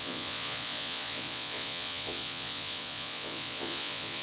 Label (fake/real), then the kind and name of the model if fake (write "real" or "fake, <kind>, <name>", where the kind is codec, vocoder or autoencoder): fake, vocoder, Vocos